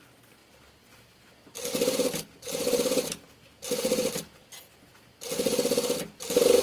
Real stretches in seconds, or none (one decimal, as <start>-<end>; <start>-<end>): 0.0-6.6